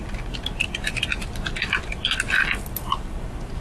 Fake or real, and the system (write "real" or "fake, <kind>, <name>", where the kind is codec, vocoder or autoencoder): real